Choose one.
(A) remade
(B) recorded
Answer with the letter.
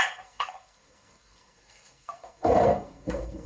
A